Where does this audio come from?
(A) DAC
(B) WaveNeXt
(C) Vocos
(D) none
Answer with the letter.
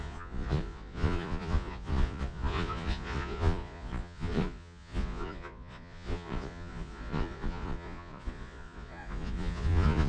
C